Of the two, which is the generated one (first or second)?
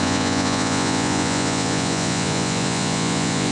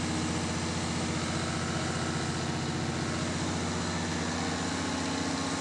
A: first